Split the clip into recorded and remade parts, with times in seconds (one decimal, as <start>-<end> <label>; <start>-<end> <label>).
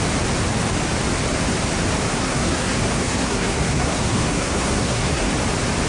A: 0.0-2.1 recorded; 2.1-5.3 remade; 5.3-5.9 recorded